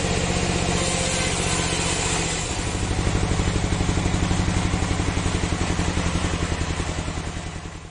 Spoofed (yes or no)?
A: no